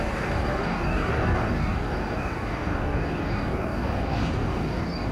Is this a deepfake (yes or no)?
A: yes